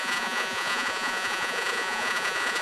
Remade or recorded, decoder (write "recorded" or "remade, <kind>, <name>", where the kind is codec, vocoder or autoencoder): remade, vocoder, Vocos